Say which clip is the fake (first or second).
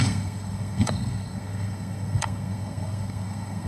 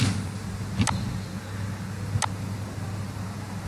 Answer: first